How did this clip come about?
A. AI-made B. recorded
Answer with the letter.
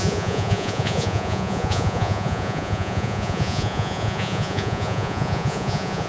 A